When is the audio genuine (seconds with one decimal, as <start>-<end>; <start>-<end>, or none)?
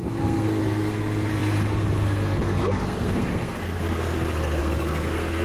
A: none